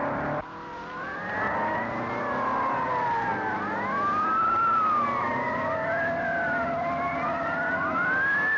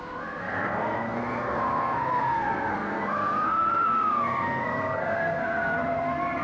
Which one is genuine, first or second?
first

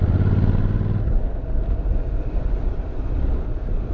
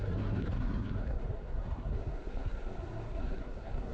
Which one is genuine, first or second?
first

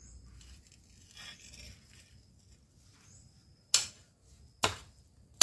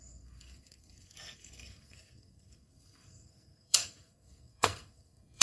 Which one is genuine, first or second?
first